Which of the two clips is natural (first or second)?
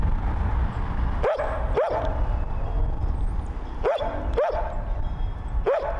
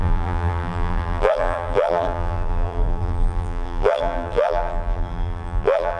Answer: first